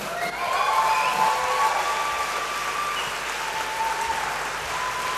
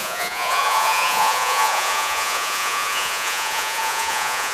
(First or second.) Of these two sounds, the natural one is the first